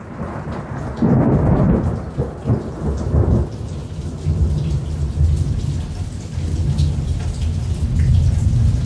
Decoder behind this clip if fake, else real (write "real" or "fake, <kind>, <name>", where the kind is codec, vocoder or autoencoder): real